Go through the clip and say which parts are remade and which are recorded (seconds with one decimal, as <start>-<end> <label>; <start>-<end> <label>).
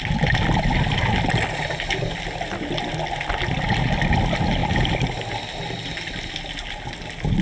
0.0-7.4 recorded